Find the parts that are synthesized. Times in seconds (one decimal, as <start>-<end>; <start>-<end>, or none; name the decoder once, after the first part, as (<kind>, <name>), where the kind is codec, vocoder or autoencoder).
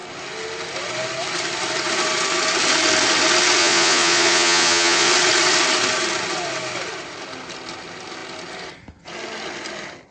3.6-5.1 (vocoder, Vocos)